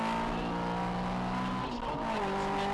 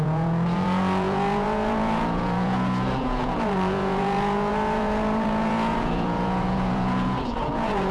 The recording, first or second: first